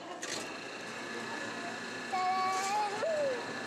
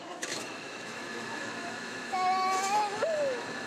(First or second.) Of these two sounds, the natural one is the first